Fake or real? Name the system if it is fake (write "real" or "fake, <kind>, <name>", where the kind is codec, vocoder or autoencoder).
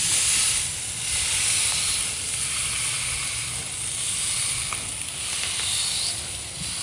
real